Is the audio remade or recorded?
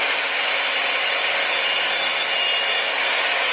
recorded